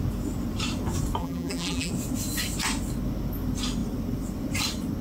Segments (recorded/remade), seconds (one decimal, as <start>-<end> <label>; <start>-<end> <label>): 0.0-1.2 recorded; 1.2-1.9 remade; 1.9-5.0 recorded